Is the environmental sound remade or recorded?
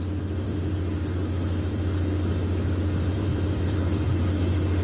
remade